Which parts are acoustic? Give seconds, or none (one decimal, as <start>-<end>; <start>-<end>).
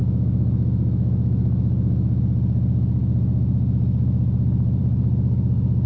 2.2-5.9